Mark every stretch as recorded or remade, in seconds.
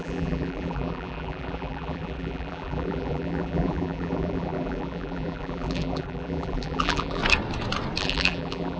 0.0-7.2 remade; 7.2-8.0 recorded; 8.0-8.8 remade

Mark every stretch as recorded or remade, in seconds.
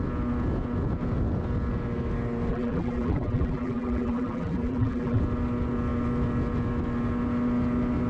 0.0-2.5 recorded; 2.5-5.2 remade; 5.2-8.1 recorded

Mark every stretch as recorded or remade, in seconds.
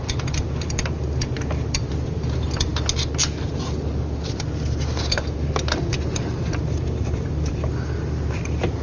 0.0-2.7 remade; 2.7-5.9 recorded; 5.9-8.8 remade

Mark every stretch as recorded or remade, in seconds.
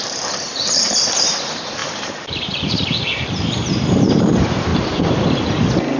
0.0-4.7 remade; 4.7-6.0 recorded